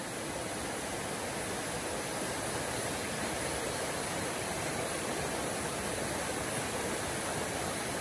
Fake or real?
real